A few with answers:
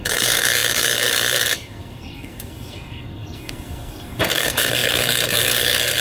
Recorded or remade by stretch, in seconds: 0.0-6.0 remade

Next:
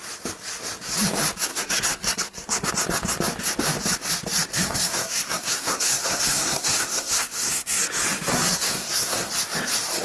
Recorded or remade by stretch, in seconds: 0.0-1.5 recorded; 1.5-2.7 remade; 2.7-4.5 recorded; 4.5-7.8 remade; 7.8-8.3 recorded; 8.3-9.3 remade; 9.3-10.0 recorded

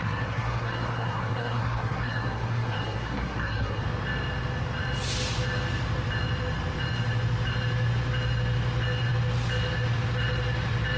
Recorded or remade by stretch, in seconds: 0.0-3.8 remade; 3.8-11.0 recorded

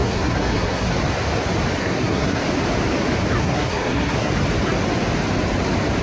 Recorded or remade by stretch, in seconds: 0.0-0.9 remade; 0.9-1.8 recorded; 1.8-2.4 remade; 2.4-3.4 recorded; 3.4-4.3 remade; 4.3-6.0 recorded